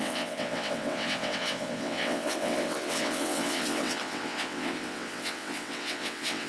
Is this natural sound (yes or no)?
no